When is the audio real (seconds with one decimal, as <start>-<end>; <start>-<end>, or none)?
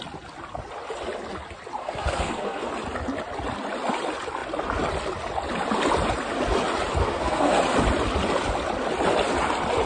0.0-1.8; 2.7-7.0; 7.6-9.9